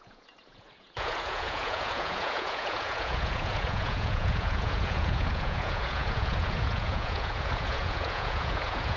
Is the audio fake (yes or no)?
yes